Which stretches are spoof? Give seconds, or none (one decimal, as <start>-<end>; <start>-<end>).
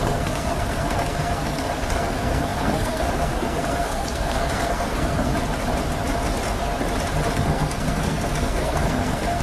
0.0-5.3; 7.3-9.4